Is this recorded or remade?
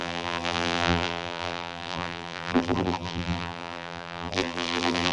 remade